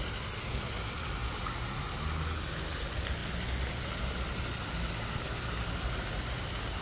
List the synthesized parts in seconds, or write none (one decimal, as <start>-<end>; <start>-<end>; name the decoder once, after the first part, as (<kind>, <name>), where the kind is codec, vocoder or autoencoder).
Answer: none